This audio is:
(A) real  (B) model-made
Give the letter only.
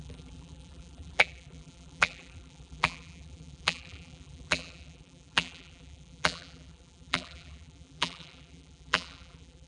B